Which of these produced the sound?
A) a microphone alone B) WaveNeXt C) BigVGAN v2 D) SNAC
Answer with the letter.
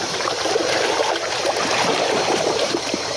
C